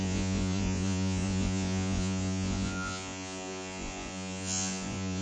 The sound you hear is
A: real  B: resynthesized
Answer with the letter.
B